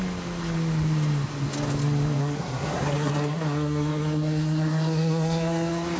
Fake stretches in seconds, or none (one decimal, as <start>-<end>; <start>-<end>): 2.2-6.0